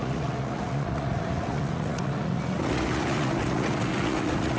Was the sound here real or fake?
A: fake